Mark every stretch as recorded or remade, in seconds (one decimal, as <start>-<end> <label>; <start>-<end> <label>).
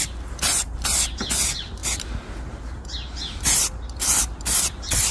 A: 0.0-5.1 recorded